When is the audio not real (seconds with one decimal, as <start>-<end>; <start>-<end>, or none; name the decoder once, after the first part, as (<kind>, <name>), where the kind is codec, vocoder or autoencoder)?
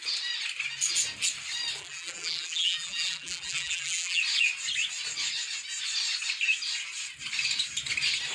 1.8-4.2 (vocoder, BigVGAN v2)